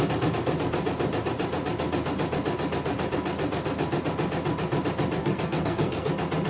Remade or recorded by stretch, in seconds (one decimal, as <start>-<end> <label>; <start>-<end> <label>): 0.0-5.2 recorded; 5.2-6.1 remade; 6.1-6.5 recorded